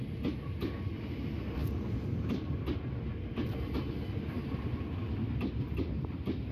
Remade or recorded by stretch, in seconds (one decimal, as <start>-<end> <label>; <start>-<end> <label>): 0.0-6.5 recorded